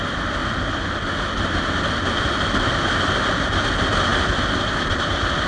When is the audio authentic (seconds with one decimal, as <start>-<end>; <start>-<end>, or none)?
0.0-5.5